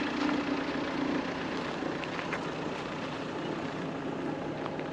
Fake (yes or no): no